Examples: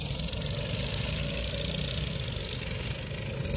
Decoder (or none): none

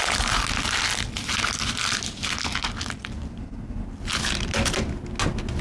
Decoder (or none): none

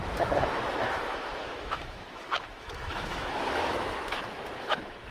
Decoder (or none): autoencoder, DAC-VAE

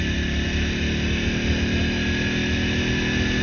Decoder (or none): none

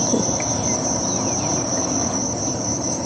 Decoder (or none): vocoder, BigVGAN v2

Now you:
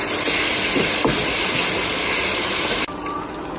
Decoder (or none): none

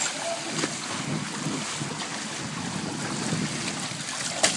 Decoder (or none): none